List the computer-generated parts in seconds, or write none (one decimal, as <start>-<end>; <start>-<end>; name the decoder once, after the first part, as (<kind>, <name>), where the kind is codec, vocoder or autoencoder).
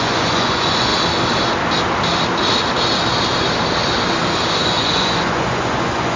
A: 0.0-0.9 (vocoder, Vocos); 4.6-6.2